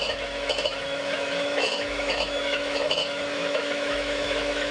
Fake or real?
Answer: fake